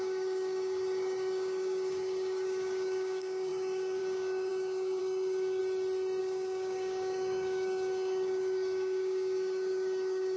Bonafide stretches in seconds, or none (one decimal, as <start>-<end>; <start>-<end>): 5.6-6.2